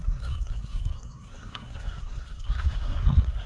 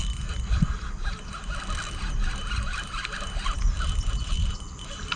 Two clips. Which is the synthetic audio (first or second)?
first